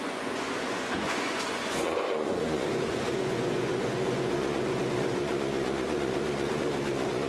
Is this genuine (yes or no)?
no